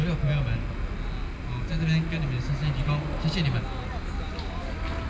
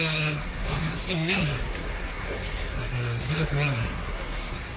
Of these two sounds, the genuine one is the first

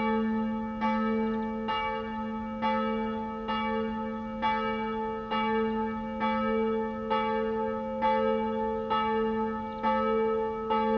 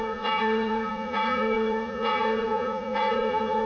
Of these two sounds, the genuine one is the first